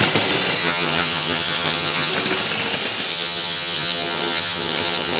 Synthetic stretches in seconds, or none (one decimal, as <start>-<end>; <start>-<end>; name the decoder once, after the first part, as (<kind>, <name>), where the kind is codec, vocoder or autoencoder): 0.6-2.1 (vocoder, HiFi-GAN); 3.1-5.2